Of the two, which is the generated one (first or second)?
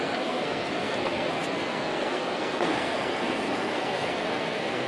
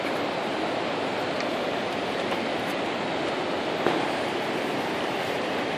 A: first